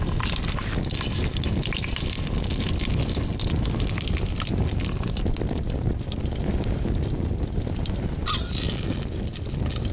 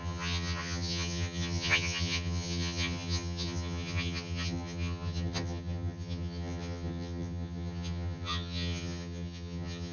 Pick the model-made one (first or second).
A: second